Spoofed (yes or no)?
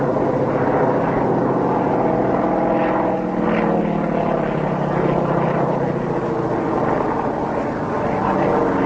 no